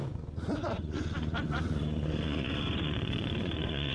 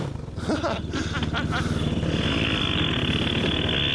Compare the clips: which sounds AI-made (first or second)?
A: first